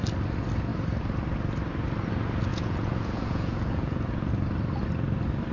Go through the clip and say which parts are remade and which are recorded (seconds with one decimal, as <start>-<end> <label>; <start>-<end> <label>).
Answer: 0.0-2.5 recorded; 2.5-4.3 remade; 4.3-5.5 recorded

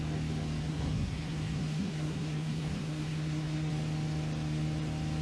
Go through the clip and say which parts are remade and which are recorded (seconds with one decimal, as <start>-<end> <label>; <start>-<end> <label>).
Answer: 0.0-0.6 recorded; 0.6-3.7 remade; 3.7-5.2 recorded

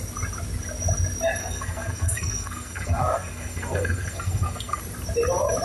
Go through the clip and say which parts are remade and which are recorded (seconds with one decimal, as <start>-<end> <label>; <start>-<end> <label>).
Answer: 0.0-1.4 recorded; 1.4-4.8 remade; 4.8-5.6 recorded

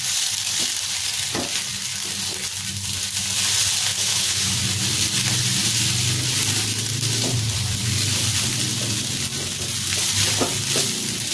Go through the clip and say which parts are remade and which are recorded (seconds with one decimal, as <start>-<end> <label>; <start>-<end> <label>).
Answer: 0.0-3.9 recorded; 3.9-4.6 remade; 4.6-11.3 recorded

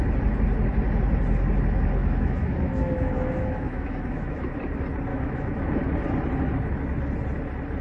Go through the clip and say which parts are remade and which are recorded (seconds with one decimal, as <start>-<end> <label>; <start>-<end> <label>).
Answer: 0.0-2.0 recorded; 2.0-4.5 remade; 4.5-5.1 recorded; 5.1-5.8 remade; 5.8-7.8 recorded

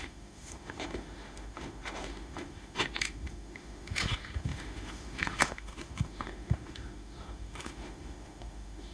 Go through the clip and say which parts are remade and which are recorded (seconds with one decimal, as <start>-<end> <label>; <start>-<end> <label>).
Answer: 0.0-8.9 remade

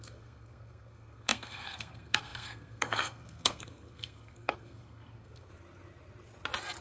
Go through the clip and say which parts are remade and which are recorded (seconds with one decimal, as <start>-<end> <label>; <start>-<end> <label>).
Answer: 0.0-5.5 remade; 5.5-6.8 recorded